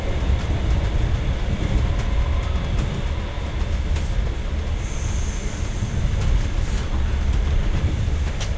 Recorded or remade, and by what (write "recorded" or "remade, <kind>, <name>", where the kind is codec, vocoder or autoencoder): recorded